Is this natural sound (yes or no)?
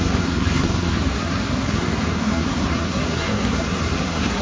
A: no